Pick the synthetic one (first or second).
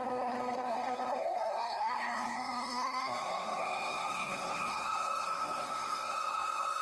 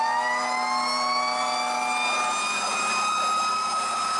first